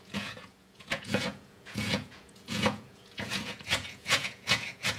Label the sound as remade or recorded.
remade